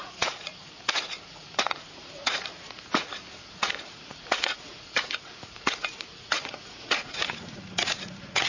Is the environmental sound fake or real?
fake